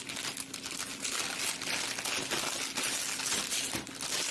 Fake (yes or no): no